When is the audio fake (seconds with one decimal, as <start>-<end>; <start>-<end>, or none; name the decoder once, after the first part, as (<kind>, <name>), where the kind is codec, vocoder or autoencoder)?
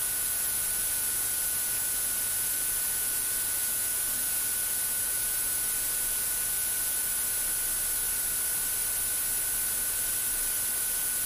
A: 0.0-7.0 (vocoder, Vocos); 10.8-11.3